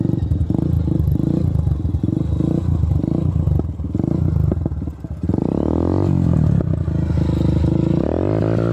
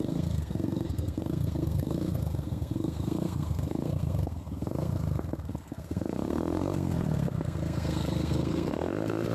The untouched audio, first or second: first